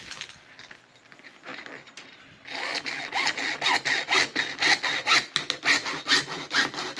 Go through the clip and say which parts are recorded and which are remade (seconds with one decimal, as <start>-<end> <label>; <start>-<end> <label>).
0.0-7.0 recorded